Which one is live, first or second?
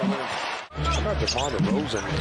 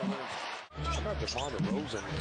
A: first